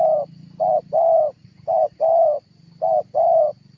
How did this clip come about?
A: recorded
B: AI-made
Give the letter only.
B